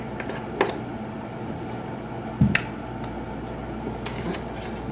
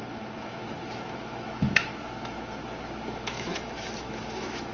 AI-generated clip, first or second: second